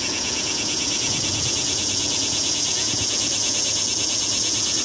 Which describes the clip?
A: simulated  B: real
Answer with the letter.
A